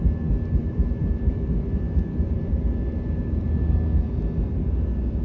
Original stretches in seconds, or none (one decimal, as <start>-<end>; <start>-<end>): 0.0-0.6; 3.7-5.2